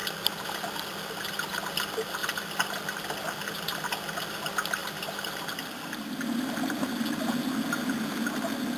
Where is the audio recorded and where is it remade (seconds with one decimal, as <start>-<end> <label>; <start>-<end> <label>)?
0.0-2.2 recorded; 2.2-4.2 remade; 4.2-4.8 recorded; 4.8-6.8 remade; 6.8-8.8 recorded